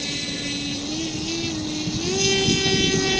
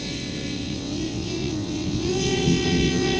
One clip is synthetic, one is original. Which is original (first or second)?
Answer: first